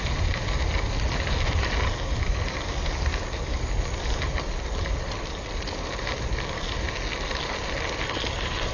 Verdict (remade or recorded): recorded